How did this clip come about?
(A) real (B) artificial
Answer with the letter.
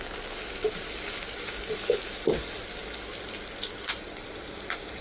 A